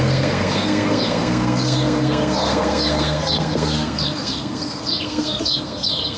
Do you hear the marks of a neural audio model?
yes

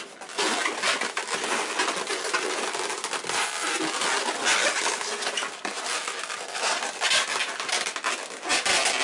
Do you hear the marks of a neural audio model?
no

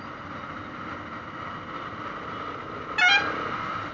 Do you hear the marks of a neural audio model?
no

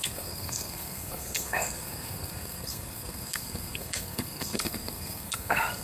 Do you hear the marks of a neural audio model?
yes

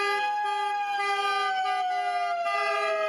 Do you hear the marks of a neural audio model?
no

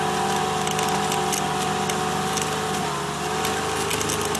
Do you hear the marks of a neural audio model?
no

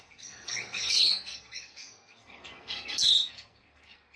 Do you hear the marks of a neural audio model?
yes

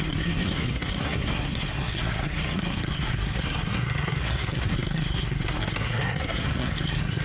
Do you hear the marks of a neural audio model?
yes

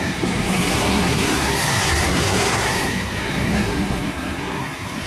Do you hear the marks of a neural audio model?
yes